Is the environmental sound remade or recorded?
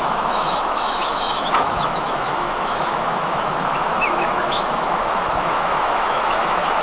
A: remade